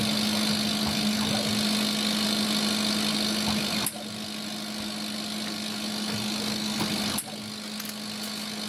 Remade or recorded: recorded